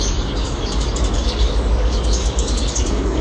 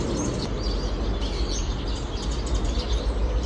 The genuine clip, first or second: second